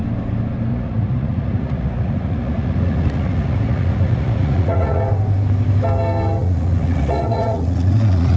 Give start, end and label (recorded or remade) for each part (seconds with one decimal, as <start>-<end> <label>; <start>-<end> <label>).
0.0-0.7 recorded; 0.7-5.0 remade; 5.0-6.4 recorded; 6.4-8.4 remade